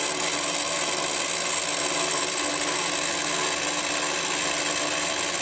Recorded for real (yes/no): yes